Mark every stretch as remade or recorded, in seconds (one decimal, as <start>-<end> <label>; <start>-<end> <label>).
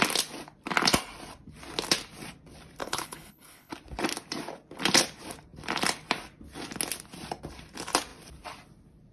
0.0-2.8 recorded; 2.8-3.7 remade; 3.7-9.1 recorded